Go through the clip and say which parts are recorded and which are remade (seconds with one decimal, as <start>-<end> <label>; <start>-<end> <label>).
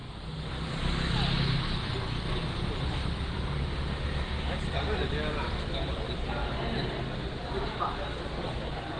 0.0-3.0 recorded; 3.0-4.0 remade; 4.0-9.0 recorded